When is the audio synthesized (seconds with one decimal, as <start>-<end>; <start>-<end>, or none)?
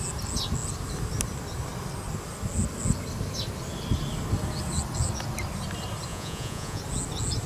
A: 6.1-6.8